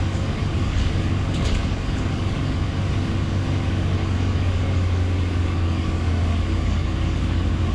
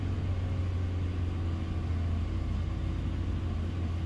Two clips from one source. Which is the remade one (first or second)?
first